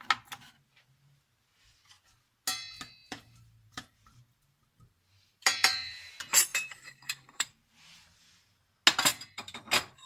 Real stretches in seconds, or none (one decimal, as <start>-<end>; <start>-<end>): 0.0-3.0; 6.1-6.5; 8.7-9.1; 9.7-10.1